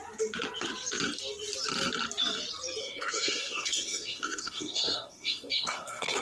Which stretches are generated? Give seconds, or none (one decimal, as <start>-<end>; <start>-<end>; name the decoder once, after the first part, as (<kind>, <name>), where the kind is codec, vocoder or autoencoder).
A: 2.8-6.2 (codec, SNAC)